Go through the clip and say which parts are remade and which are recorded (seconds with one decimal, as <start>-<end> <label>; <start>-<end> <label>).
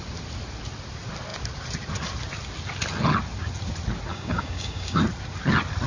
0.0-4.1 recorded; 4.1-5.0 remade; 5.0-5.9 recorded